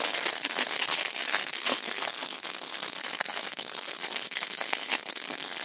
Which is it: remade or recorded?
remade